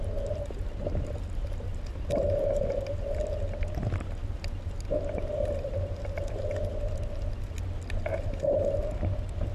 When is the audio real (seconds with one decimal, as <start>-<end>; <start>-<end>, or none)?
0.0-9.5